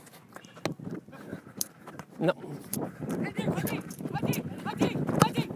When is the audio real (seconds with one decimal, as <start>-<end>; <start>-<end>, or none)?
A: 0.0-1.3; 4.7-5.6